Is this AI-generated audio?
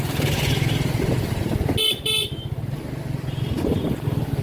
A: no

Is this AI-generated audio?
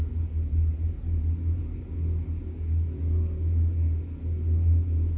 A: no